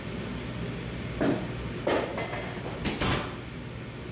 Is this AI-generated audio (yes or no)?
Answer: no